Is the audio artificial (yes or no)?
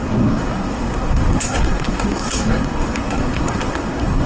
yes